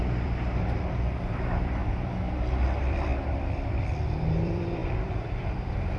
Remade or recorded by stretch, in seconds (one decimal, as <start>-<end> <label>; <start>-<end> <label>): 0.0-1.8 remade; 1.8-2.3 recorded; 2.3-3.1 remade; 3.1-3.7 recorded; 3.7-6.0 remade